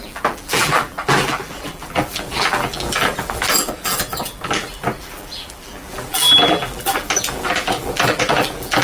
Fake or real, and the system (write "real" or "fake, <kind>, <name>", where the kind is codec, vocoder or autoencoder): fake, vocoder, BigVGAN v2